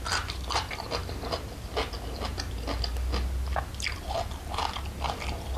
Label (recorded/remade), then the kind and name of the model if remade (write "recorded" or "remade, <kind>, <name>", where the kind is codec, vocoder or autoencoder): recorded